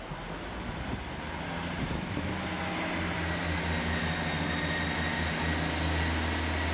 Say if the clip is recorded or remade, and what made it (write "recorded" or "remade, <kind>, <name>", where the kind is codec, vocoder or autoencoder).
recorded